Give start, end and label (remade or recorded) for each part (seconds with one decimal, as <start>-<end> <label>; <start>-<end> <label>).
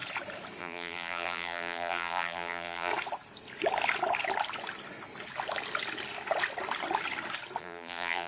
0.0-0.6 recorded; 0.6-2.9 remade; 2.9-7.6 recorded; 7.6-8.3 remade